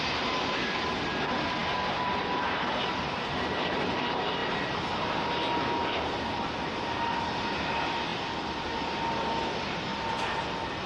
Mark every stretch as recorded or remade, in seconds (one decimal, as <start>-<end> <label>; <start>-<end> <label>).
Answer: 0.0-10.9 recorded